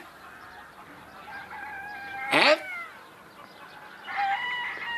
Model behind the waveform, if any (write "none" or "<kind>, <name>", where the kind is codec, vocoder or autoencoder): none